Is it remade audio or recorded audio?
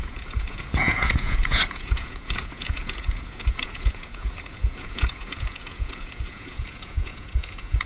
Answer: remade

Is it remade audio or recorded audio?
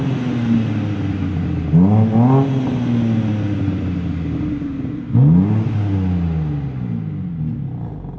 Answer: recorded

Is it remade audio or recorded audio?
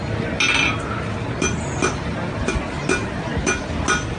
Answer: recorded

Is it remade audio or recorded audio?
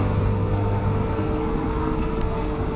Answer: remade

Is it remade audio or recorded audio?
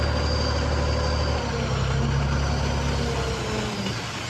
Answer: recorded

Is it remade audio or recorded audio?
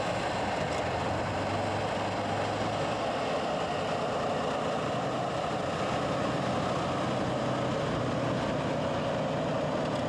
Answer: recorded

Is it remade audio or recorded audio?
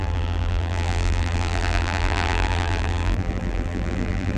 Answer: remade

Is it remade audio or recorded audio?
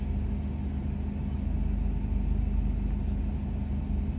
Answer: recorded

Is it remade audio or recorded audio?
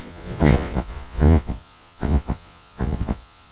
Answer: remade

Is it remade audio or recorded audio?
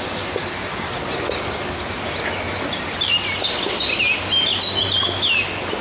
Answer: recorded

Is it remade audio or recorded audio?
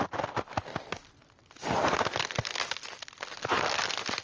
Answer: recorded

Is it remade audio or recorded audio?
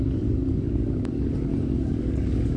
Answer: remade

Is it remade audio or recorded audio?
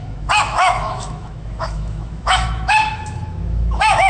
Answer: remade